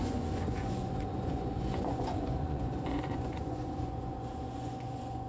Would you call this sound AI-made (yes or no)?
yes